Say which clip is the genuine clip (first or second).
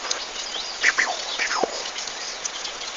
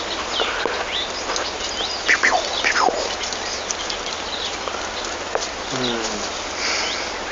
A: second